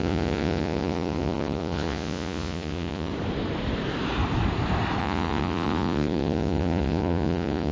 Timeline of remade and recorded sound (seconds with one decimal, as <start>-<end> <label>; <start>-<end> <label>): 0.0-3.1 remade; 3.1-5.0 recorded; 5.0-7.7 remade